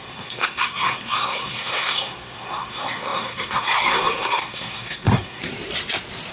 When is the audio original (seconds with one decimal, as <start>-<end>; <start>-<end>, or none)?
5.4-6.3